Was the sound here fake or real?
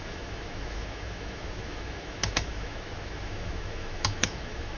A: fake